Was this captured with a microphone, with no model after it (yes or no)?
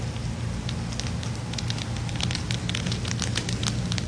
yes